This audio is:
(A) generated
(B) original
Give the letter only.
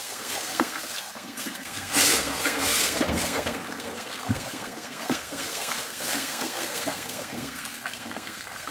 A